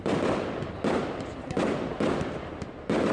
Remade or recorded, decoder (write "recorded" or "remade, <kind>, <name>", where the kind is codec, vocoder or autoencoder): recorded